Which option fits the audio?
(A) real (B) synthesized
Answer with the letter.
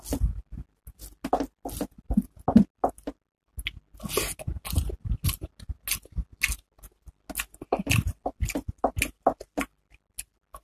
A